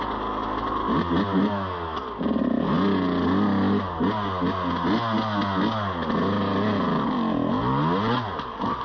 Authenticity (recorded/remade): recorded